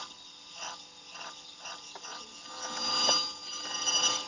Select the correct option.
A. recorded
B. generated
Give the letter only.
A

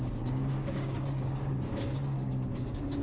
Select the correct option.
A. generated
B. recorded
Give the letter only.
A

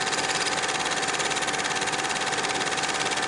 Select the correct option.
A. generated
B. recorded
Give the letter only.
B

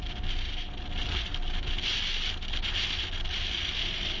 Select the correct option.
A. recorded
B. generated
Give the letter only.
A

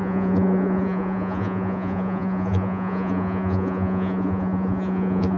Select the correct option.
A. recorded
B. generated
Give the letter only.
B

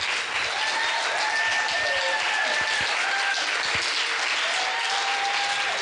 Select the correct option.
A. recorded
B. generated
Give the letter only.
A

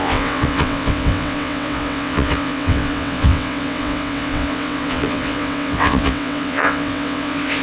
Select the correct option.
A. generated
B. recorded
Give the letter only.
A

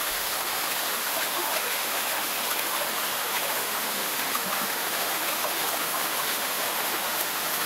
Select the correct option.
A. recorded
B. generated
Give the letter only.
B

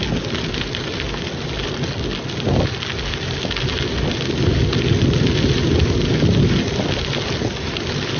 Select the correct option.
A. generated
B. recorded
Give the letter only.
B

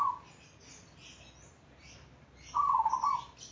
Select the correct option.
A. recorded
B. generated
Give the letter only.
A